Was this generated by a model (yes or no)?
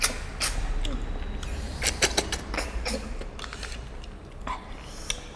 no